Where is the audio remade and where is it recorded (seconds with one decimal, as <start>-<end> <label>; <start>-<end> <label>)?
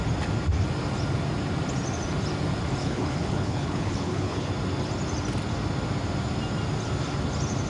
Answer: 0.0-2.8 recorded; 2.8-4.5 remade; 4.5-7.7 recorded